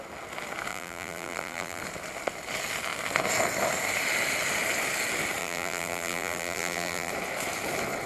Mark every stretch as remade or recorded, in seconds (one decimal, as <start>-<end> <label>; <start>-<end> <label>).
0.0-0.7 recorded; 0.7-1.8 remade; 1.8-5.4 recorded; 5.4-7.1 remade; 7.1-8.1 recorded